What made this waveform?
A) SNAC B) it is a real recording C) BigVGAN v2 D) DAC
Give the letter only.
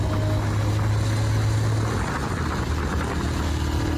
B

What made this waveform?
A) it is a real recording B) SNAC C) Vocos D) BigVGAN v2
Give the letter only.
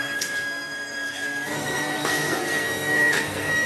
B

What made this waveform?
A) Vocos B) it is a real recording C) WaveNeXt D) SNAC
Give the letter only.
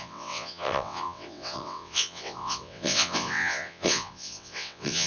C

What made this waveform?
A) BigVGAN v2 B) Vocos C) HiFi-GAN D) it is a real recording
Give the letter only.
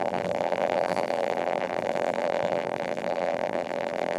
A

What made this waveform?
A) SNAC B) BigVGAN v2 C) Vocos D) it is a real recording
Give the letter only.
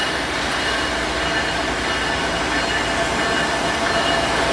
D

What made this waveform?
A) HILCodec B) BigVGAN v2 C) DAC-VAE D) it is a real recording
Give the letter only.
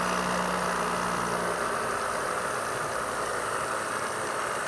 D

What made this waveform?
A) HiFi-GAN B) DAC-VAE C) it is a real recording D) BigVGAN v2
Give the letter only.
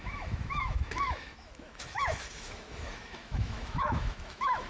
B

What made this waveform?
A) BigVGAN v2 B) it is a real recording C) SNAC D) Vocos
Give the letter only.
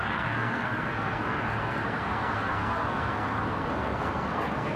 C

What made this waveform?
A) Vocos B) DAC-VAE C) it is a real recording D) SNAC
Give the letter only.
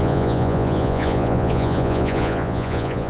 A